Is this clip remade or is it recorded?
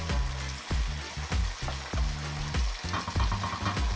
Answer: recorded